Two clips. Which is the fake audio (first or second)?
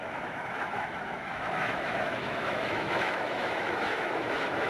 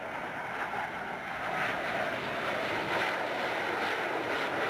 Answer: first